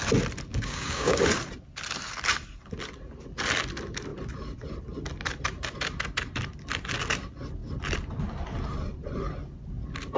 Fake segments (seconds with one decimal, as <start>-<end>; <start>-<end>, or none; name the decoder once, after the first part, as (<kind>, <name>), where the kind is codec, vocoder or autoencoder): 0.5-1.2 (codec, DAC)